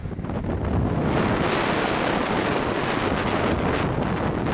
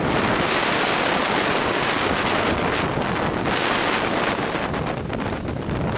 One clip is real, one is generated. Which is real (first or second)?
first